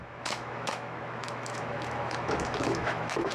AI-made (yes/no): yes